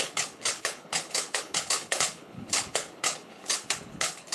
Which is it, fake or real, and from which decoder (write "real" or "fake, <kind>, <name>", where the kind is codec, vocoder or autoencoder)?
fake, codec, HILCodec